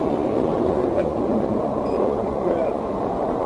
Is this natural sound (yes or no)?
no